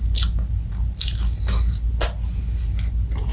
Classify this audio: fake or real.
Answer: real